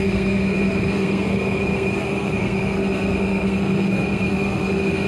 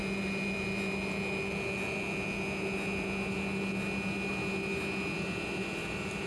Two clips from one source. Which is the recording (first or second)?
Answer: second